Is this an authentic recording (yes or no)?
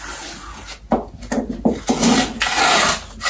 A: yes